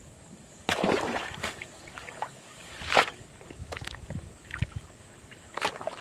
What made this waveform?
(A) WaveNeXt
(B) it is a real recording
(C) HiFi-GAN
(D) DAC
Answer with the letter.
D